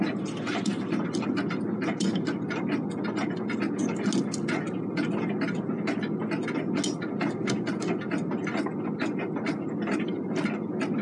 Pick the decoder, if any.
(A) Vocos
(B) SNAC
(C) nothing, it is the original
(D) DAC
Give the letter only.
C